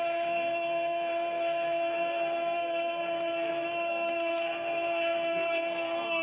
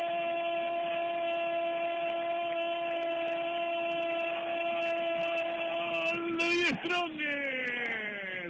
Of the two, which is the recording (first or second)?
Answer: second